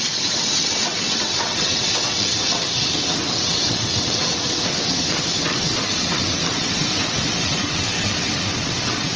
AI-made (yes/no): yes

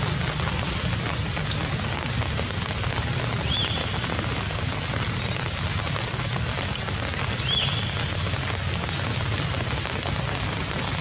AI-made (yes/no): no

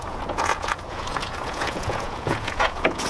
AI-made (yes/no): yes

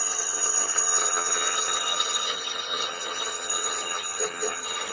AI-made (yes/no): yes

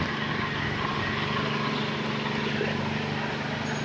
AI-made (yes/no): no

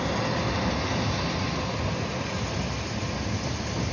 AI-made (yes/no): no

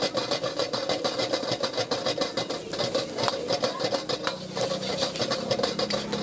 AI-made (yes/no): no